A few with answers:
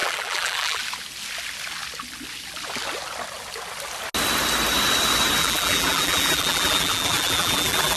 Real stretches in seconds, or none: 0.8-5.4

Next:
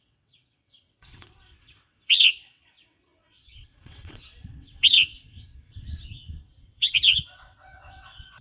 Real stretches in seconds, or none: none

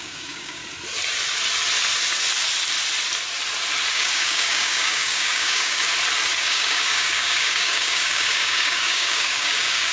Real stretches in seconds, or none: 0.6-3.9; 5.9-6.4